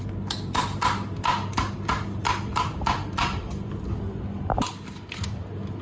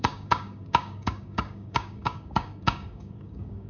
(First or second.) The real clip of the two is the first